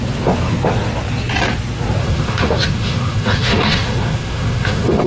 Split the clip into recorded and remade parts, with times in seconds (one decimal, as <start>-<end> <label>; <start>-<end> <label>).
0.0-2.0 recorded; 2.0-5.1 remade